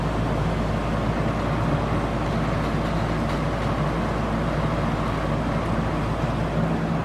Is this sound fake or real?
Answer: real